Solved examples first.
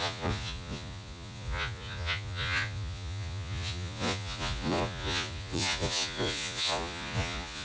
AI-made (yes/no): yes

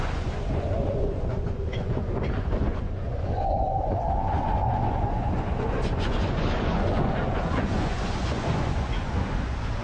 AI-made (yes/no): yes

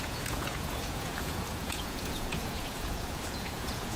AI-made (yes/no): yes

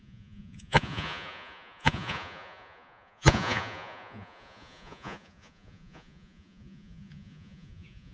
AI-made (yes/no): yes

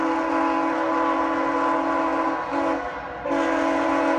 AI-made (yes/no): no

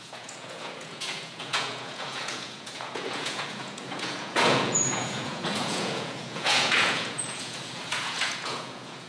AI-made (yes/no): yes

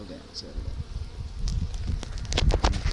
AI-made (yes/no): no